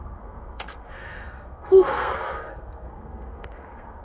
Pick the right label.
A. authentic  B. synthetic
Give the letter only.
B